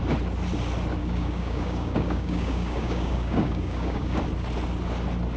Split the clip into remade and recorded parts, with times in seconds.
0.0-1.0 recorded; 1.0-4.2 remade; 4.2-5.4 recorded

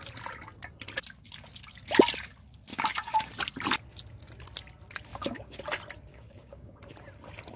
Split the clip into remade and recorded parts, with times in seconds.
0.0-2.7 recorded; 2.7-3.3 remade; 3.3-5.1 recorded; 5.1-5.6 remade; 5.6-6.1 recorded; 6.1-6.8 remade; 6.8-7.6 recorded

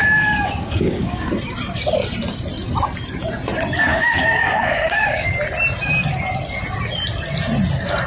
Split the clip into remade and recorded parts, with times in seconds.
0.0-1.3 remade; 1.3-3.9 recorded; 3.9-5.3 remade; 5.3-8.1 recorded

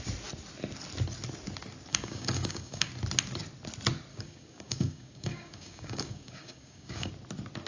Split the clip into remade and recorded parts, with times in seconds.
0.0-1.9 recorded; 1.9-2.9 remade; 2.9-4.1 recorded; 4.1-7.1 remade; 7.1-7.7 recorded

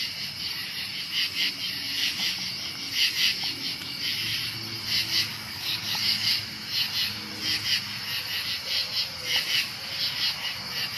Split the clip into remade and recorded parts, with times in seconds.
0.0-5.3 recorded; 5.3-6.3 remade; 6.3-11.0 recorded